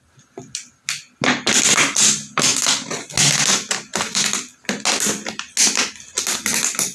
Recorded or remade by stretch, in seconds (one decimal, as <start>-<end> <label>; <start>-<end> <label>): 0.0-6.9 recorded